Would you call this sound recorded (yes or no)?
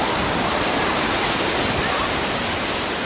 yes